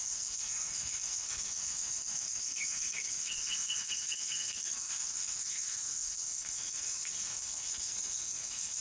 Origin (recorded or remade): remade